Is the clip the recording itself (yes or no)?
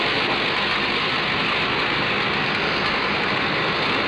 yes